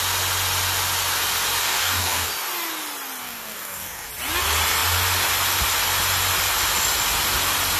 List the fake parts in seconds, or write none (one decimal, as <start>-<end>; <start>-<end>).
1.6-2.3; 3.2-4.1